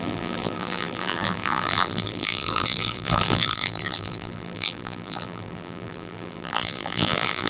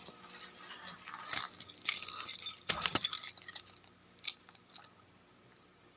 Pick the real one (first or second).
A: second